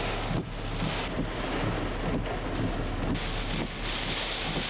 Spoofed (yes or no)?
no